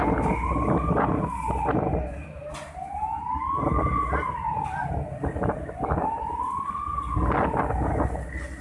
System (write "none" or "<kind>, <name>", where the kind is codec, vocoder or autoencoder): none